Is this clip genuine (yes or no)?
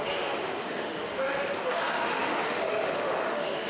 no